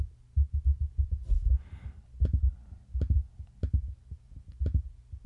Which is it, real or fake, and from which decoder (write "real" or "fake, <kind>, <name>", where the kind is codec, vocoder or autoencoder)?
real